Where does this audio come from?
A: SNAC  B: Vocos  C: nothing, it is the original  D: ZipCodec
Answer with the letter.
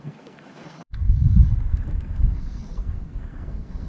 A